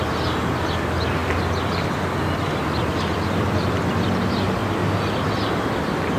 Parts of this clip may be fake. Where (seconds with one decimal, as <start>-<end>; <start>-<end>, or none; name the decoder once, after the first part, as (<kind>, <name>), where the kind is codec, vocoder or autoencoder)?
none